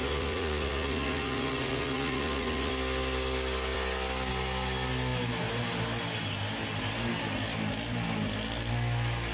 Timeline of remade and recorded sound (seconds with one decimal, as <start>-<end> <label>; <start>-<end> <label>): 0.0-2.7 remade; 2.7-9.3 recorded